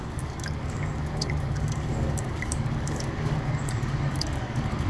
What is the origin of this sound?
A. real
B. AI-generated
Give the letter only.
B